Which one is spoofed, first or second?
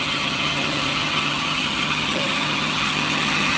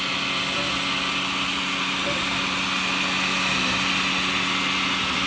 first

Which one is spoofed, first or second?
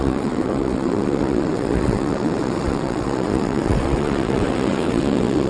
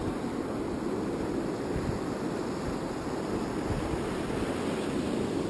first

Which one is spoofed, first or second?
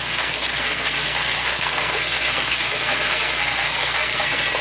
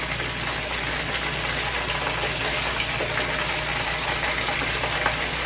first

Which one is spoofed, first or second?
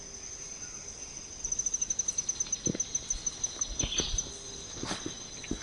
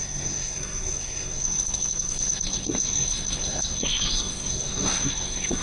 second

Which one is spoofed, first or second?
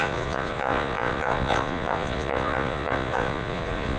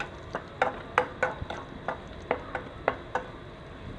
first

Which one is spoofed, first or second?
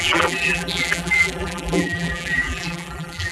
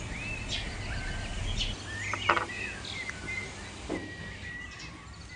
first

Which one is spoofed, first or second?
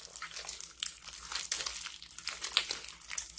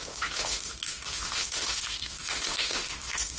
second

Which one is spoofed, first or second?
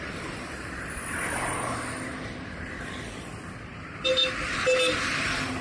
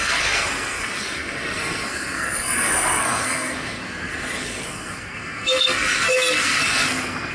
second